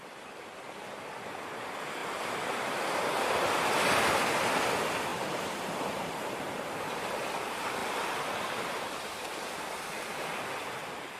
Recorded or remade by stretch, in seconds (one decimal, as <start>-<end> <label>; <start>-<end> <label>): 0.0-2.0 recorded; 2.0-3.6 remade; 3.6-5.1 recorded; 5.1-6.7 remade; 6.7-11.2 recorded